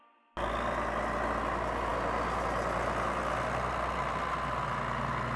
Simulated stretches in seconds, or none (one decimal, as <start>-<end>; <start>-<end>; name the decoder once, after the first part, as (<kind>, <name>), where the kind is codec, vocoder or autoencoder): none